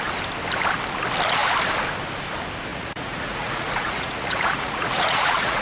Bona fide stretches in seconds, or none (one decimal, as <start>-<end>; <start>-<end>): 0.0-2.7